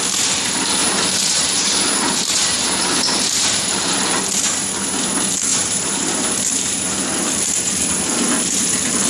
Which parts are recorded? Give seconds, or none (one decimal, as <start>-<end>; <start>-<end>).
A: 0.0-0.8; 4.2-5.5; 6.5-9.1